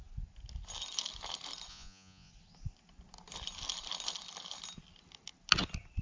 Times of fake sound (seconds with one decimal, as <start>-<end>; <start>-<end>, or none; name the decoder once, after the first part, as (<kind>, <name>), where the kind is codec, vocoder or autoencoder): 1.7-2.3 (vocoder, Vocos)